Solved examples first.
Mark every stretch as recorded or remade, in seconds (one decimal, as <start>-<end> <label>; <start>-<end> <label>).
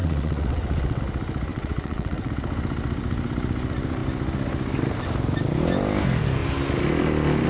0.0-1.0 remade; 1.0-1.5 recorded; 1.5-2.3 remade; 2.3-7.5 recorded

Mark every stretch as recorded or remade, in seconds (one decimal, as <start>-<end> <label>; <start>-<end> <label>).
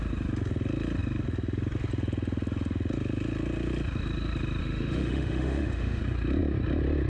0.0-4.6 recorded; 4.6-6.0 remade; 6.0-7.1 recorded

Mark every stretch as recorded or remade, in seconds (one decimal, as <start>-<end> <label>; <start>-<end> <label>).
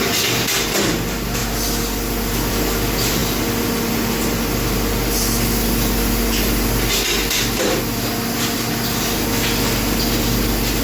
0.0-10.8 recorded